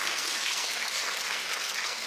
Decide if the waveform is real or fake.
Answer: fake